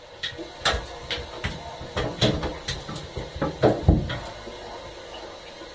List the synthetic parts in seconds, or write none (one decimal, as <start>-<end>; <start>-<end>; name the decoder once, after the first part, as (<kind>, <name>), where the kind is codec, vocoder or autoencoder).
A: none